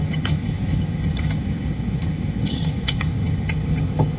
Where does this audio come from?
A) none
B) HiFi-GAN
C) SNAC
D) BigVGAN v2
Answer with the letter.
B